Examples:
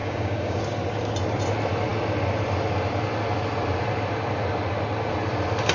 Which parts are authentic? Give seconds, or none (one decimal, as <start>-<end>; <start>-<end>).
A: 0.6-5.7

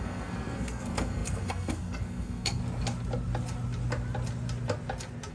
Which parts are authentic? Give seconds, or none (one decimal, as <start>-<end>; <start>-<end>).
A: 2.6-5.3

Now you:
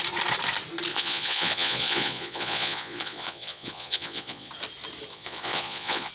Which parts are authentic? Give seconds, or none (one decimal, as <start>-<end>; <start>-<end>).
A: 0.0-0.9; 4.5-5.1

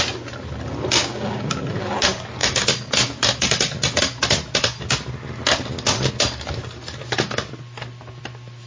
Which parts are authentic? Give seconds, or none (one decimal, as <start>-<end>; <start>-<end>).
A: 0.0-1.0; 1.5-8.7